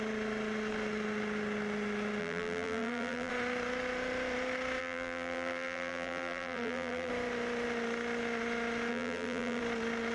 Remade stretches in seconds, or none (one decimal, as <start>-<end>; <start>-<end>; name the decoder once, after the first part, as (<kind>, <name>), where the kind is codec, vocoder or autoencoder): 2.2-3.3 (vocoder, BigVGAN v2); 4.8-7.1; 8.9-9.6